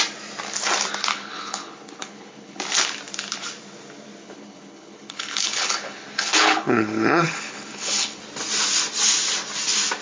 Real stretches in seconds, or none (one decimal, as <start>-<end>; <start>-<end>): 0.0-1.1; 2.6-4.2; 8.2-10.0